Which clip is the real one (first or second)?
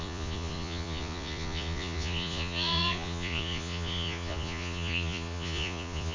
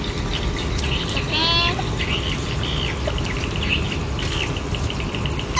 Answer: second